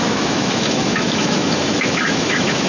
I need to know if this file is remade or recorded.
remade